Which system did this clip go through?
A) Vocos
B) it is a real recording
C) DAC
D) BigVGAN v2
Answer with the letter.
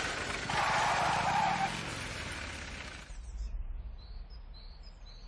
B